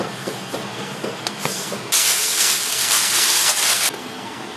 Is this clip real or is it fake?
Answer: fake